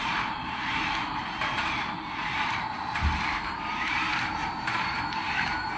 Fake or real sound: fake